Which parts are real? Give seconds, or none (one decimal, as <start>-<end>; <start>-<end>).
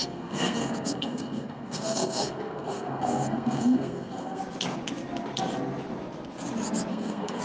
4.4-6.9